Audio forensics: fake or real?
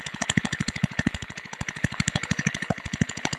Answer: fake